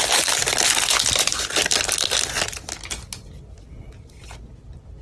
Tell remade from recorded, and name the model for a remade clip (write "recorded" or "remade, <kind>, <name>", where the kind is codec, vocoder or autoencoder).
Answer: recorded